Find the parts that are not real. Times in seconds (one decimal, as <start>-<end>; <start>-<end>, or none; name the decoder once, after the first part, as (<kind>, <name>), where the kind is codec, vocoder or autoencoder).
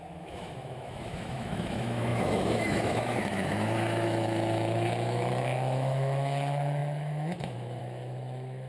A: 0.0-8.7 (autoencoder, DAC-VAE)